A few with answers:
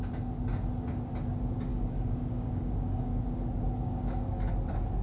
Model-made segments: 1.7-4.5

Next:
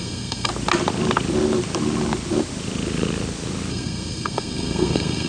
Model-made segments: 0.0-0.5; 3.7-5.3

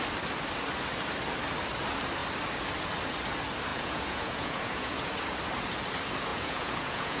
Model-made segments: 3.7-5.1; 6.3-7.2

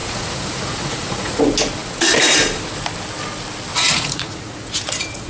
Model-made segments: 0.0-1.4; 3.7-5.3

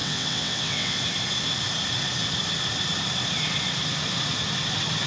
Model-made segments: 0.0-1.0